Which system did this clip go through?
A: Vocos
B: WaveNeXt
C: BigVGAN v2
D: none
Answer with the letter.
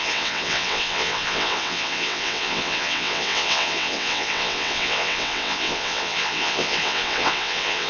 B